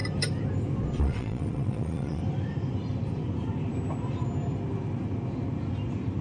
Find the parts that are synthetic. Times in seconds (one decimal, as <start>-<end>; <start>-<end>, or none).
1.0-2.2